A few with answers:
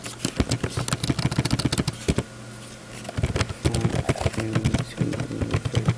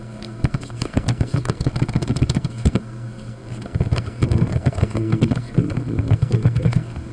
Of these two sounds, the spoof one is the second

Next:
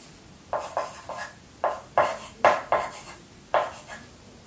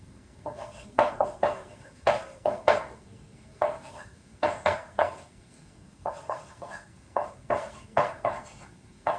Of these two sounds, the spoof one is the second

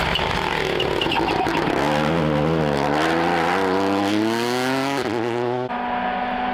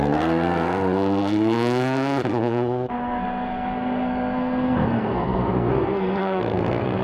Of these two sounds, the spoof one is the second